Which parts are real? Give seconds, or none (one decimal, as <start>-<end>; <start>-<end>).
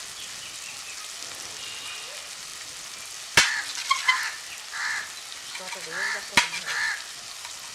0.0-7.7